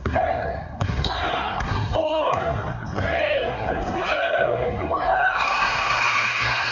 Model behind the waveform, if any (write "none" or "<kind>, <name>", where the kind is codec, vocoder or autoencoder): codec, SNAC